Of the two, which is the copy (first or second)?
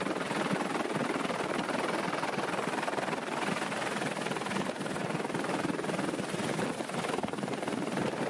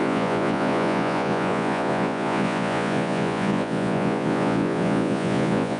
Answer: second